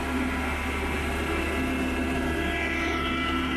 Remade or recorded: recorded